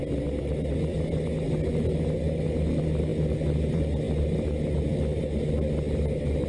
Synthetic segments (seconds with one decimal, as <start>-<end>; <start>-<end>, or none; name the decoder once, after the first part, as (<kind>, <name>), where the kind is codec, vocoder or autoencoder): none